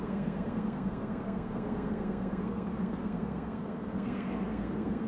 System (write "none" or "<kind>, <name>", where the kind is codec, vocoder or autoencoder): codec, SNAC